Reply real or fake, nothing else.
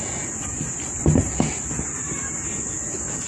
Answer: real